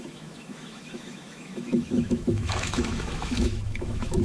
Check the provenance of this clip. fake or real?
fake